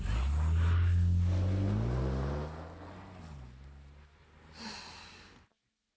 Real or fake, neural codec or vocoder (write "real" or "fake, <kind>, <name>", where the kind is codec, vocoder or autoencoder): real